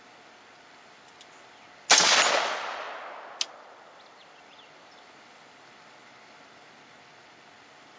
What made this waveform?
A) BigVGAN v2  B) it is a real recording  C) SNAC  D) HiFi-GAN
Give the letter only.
B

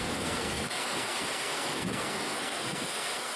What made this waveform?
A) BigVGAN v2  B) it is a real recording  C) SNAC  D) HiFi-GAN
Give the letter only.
C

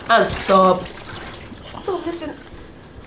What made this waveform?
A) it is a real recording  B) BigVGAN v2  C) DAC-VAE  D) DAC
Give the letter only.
A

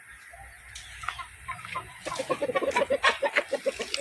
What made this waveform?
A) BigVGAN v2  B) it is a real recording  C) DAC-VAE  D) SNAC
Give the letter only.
B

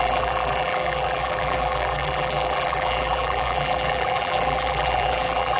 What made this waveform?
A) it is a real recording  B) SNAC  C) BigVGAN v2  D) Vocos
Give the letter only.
C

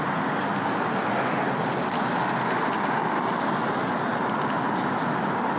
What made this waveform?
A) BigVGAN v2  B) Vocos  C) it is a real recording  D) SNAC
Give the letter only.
C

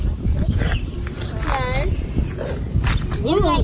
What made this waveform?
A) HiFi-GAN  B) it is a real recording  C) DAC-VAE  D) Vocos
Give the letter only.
B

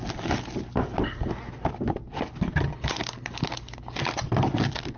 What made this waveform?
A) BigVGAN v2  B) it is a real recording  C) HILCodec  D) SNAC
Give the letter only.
B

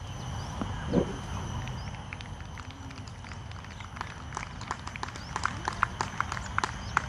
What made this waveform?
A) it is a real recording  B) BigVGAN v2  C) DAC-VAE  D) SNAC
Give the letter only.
A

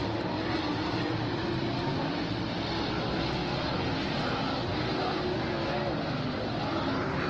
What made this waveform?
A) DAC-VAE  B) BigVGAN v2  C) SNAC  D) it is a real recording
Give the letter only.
D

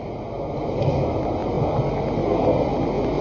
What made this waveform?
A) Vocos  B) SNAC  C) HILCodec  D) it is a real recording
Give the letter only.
D